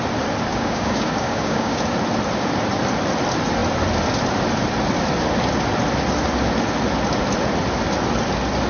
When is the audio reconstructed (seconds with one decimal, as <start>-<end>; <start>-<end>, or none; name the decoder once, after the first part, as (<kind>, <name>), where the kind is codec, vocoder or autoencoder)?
0.5-1.8 (codec, DAC)